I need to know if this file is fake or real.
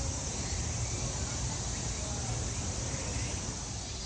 real